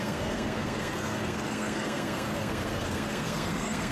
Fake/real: fake